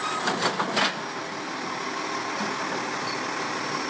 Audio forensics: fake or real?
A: real